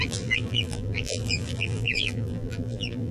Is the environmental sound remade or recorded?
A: remade